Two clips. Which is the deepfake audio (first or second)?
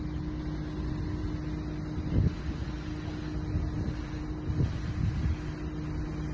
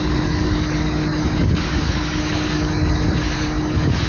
second